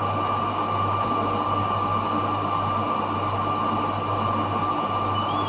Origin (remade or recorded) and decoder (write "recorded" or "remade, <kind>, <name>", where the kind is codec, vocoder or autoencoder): recorded